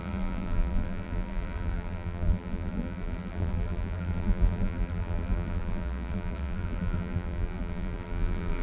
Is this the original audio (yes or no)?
no